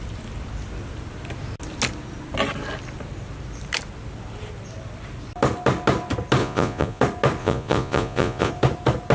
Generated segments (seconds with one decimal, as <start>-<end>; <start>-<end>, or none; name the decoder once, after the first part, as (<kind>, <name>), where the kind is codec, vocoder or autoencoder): 6.4-7.0 (vocoder, Vocos); 7.4-8.5